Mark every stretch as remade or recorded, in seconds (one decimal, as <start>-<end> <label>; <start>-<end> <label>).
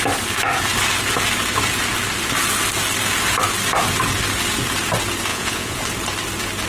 0.0-5.3 recorded; 5.3-5.8 remade; 5.8-6.7 recorded